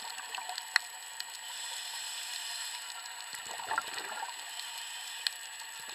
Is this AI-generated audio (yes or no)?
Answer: no